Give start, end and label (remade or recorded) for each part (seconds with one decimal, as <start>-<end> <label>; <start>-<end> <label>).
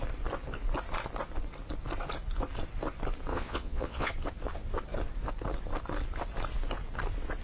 0.0-3.3 recorded; 3.3-4.1 remade; 4.1-7.4 recorded